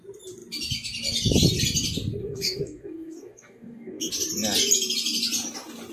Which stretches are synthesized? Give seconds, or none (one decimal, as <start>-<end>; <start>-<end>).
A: 2.2-4.1

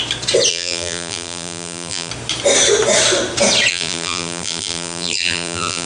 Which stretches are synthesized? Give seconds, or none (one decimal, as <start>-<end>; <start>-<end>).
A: 0.5-2.1; 3.7-5.9